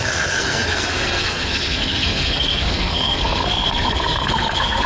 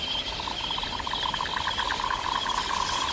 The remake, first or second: first